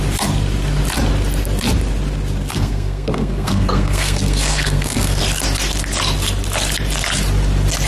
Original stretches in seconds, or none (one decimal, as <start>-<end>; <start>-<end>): 0.0-2.5; 5.2-7.9